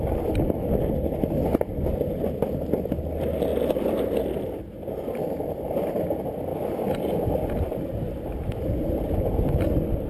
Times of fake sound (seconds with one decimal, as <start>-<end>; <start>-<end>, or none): 6.5-9.7